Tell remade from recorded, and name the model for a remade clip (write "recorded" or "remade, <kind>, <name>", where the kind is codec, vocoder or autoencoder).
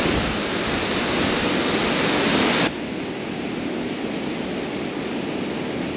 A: recorded